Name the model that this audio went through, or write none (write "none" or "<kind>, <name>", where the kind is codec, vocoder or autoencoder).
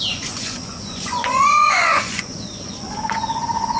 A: vocoder, Vocos